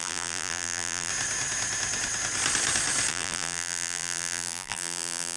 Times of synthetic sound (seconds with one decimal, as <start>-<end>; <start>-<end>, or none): 0.0-1.1; 3.1-5.4